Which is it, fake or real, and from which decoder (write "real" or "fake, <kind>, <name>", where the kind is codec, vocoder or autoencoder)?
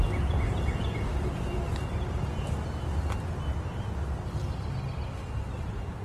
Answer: real